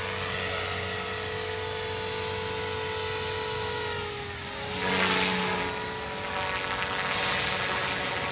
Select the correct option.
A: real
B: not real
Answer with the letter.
A